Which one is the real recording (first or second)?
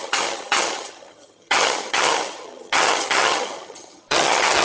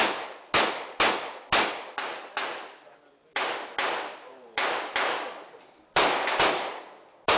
second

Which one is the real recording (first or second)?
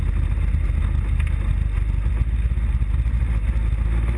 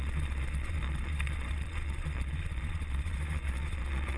first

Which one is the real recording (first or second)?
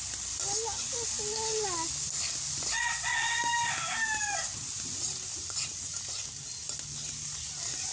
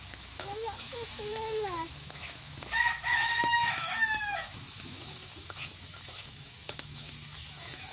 first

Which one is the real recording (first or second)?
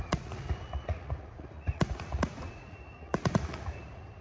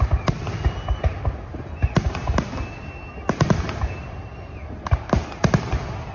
second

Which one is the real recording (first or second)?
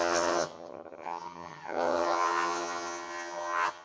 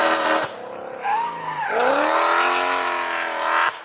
second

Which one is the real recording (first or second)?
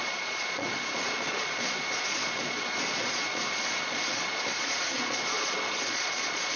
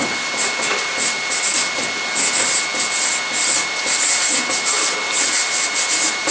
second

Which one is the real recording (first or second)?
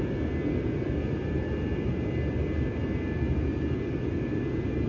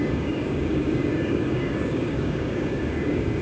first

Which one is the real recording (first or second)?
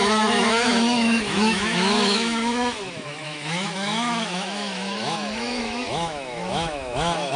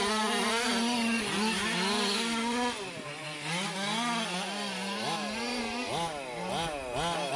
second